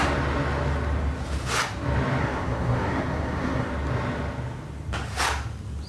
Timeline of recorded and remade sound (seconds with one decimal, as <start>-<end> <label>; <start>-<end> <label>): 0.0-2.2 recorded; 2.2-3.7 remade; 3.7-5.9 recorded